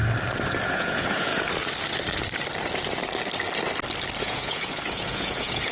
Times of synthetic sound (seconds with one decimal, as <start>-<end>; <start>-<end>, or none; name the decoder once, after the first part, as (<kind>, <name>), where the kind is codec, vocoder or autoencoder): 0.7-1.3 (vocoder, Vocos); 4.2-5.7